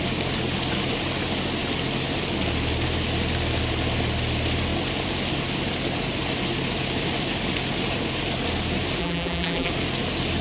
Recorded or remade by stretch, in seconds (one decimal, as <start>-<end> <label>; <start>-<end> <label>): 0.0-9.0 recorded; 9.0-9.7 remade; 9.7-10.4 recorded